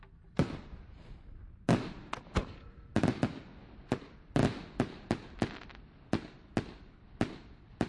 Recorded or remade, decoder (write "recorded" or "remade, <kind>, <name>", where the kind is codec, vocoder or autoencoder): recorded